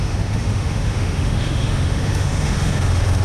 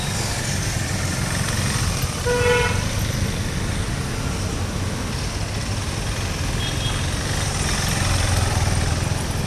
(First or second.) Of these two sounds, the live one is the second